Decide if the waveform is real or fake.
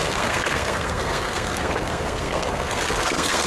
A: fake